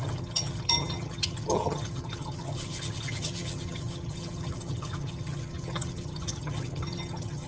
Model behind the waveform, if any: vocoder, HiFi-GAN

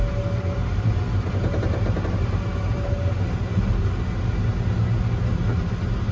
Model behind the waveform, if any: none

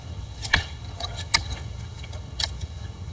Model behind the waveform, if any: vocoder, HiFi-GAN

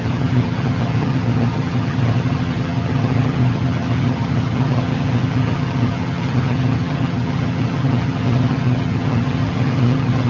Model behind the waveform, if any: vocoder, HiFi-GAN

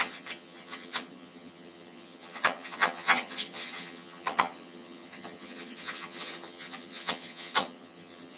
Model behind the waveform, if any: vocoder, HiFi-GAN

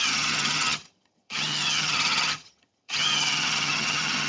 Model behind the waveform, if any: vocoder, HiFi-GAN